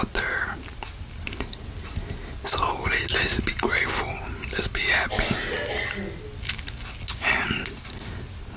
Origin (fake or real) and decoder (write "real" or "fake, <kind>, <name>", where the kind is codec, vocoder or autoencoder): real